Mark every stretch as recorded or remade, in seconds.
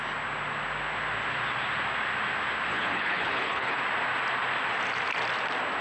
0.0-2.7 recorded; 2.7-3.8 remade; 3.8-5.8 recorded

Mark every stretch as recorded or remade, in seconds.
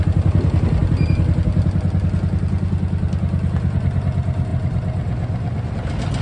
0.0-6.2 recorded